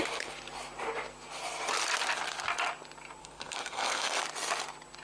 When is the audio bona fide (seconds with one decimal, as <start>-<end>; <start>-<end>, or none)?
0.0-3.2; 4.2-5.0